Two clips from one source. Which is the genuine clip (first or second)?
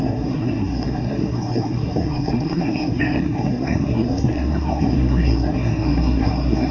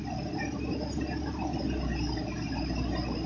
second